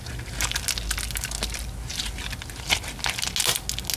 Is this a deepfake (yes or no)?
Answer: no